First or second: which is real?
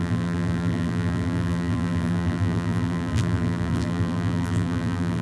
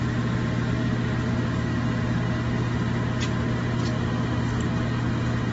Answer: second